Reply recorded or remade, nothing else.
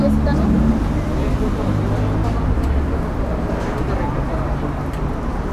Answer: recorded